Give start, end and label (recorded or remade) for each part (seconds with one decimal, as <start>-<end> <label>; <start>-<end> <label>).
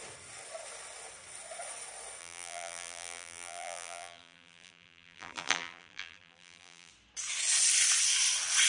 0.0-2.2 recorded; 2.2-6.9 remade; 6.9-8.7 recorded